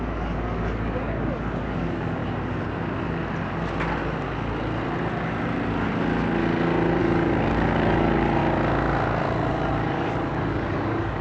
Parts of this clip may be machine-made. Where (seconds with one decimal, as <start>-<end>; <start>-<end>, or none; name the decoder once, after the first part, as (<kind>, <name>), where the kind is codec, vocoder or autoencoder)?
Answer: 0.0-2.2 (codec, DAC); 7.0-8.4; 9.5-11.2